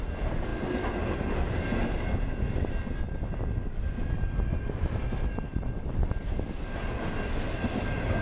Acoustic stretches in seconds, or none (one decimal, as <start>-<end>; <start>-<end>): 0.0-8.2